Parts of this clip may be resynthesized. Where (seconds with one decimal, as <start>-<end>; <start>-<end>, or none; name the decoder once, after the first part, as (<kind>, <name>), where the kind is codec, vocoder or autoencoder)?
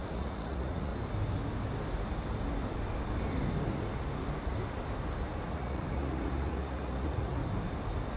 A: 0.0-0.9 (vocoder, Vocos); 5.5-7.4